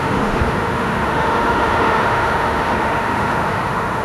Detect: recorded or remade remade